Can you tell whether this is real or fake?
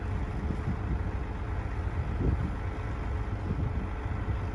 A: real